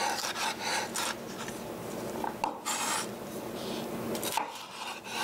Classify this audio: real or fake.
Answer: real